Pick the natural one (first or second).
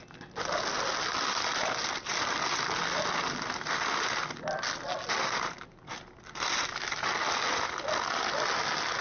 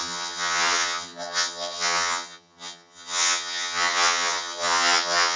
first